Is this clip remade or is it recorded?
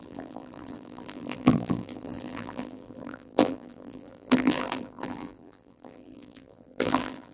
remade